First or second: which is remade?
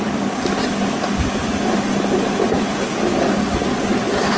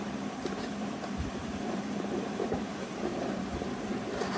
second